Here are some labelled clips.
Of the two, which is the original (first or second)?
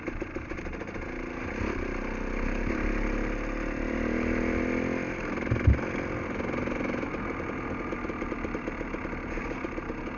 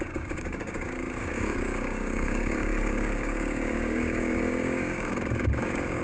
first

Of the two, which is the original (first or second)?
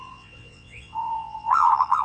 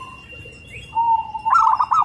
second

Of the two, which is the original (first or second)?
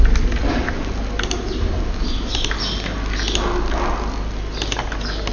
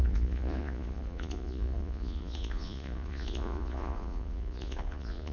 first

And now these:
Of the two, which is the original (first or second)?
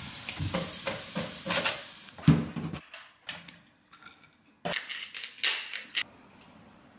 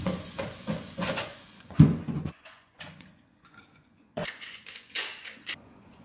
first